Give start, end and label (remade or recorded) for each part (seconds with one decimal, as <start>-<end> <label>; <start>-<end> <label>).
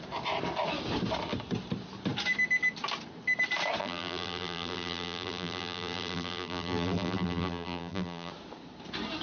0.0-3.8 recorded; 3.8-8.3 remade; 8.3-9.2 recorded